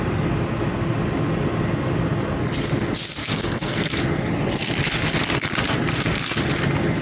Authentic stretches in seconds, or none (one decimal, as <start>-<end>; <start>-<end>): 0.0-3.2; 4.0-7.0